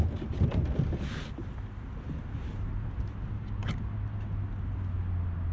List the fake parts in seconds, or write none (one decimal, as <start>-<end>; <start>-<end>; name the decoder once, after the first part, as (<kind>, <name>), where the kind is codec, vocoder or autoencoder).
none